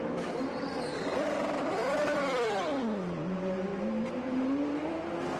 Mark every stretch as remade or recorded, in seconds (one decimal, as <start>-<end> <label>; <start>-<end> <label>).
0.0-1.1 recorded; 1.1-2.2 remade; 2.2-3.7 recorded; 3.7-4.8 remade; 4.8-5.4 recorded